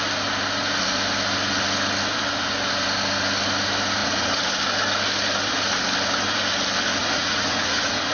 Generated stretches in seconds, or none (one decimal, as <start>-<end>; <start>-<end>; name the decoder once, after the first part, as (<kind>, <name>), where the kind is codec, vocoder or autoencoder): 4.0-4.6 (vocoder, Vocos); 7.0-8.1